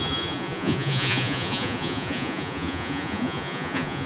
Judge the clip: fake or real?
fake